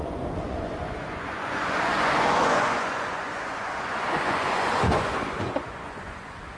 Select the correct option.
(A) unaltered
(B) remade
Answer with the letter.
B